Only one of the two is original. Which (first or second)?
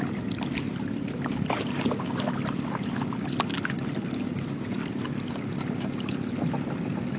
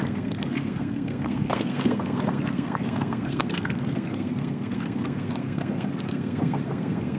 first